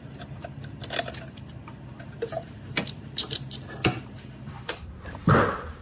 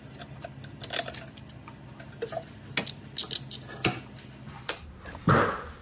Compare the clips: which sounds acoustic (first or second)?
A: second